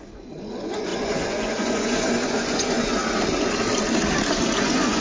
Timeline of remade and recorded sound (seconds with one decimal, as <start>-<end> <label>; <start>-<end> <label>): 0.0-3.0 remade; 3.0-4.6 recorded; 4.6-5.0 remade